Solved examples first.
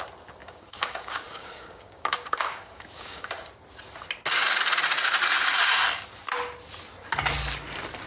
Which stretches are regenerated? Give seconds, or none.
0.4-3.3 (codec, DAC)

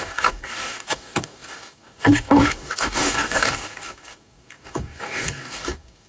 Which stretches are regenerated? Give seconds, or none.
0.0-6.1 (codec, DAC)

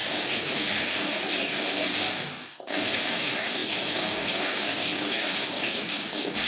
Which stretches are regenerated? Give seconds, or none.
0.0-6.5 (codec, DAC)

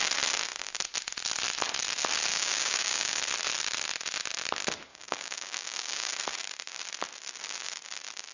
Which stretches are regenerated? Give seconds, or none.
2.3-3.2 (codec, DAC); 4.9-6.1

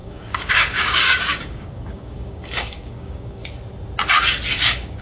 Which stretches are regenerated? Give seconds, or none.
0.0-3.4 (codec, DAC); 4.5-5.0

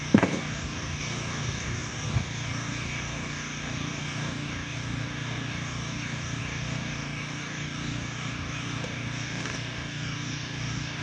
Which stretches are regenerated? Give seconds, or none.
0.0-11.0 (codec, DAC)

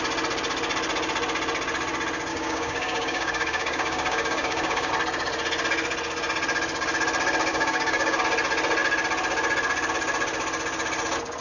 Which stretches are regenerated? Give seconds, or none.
2.3-4.9 (codec, DAC); 7.5-8.2